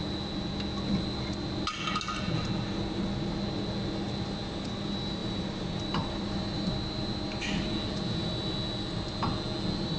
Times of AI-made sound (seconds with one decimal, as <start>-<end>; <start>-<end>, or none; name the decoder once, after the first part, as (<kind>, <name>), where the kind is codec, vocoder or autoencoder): 5.2-6.7 (vocoder, BigVGAN v2)